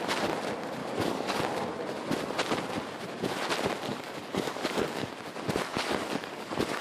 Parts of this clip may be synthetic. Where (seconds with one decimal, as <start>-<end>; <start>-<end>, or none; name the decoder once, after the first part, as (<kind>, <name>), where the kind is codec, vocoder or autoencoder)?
0.8-1.4 (codec, DAC); 3.9-5.1; 5.7-6.8